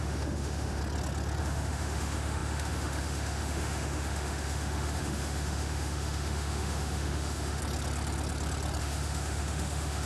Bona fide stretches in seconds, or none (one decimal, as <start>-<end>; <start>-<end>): 0.8-1.4; 7.6-8.8